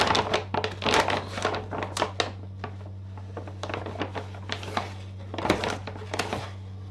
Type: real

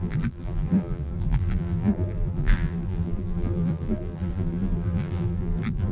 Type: fake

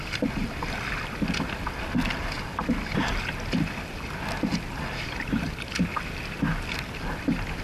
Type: real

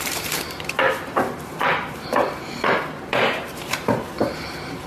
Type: fake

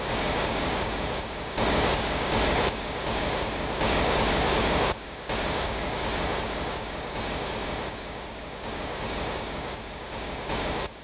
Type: fake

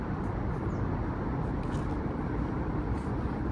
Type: real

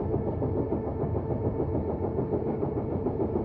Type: real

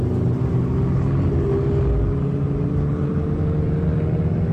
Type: real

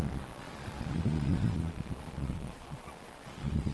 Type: fake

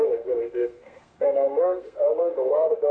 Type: fake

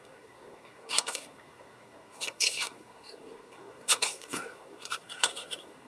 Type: fake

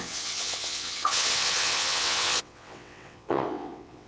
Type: fake